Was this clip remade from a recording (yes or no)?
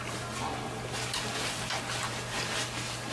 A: no